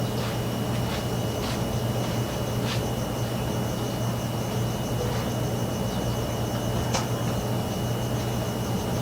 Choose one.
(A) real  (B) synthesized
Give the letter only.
A